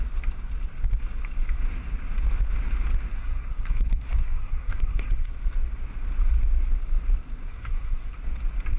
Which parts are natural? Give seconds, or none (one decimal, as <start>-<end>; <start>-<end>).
0.0-3.1; 5.3-7.4; 8.1-8.8